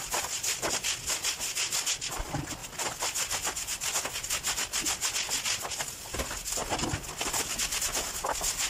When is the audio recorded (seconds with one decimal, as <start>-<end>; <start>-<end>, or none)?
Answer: 0.0-8.7